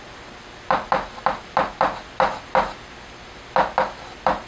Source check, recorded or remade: recorded